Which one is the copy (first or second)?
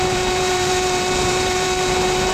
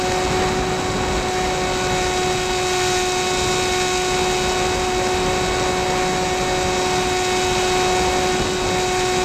first